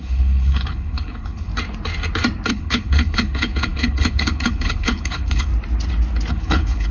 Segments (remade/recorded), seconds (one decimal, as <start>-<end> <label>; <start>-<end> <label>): 0.0-1.5 remade; 1.5-2.5 recorded; 2.5-5.5 remade; 5.5-6.3 recorded; 6.3-6.9 remade